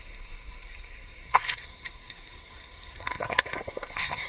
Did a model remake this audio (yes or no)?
yes